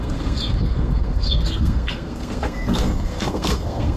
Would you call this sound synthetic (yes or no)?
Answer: yes